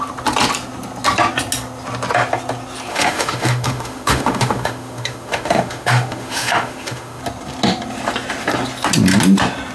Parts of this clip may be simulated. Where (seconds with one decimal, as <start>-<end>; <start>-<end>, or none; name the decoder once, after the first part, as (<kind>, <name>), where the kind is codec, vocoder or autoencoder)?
2.9-7.2 (autoencoder, DAC-VAE)